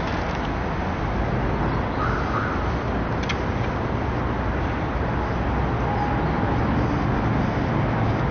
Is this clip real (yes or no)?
yes